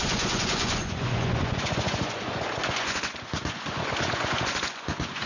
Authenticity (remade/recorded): remade